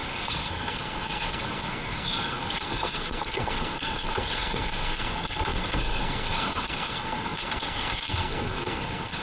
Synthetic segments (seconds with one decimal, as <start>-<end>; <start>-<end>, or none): 0.0-9.2